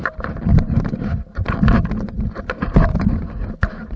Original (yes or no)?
yes